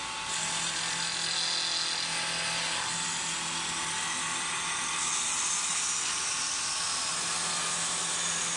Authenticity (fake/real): real